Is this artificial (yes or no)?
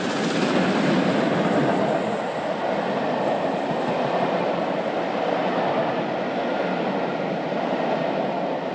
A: no